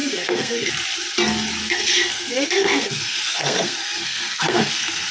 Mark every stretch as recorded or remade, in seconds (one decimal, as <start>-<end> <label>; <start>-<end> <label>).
0.0-0.7 remade; 0.7-1.6 recorded; 1.6-5.1 remade